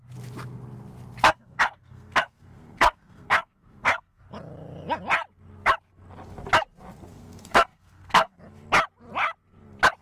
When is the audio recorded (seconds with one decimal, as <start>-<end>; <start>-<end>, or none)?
0.0-1.2; 4.2-7.1; 8.4-10.0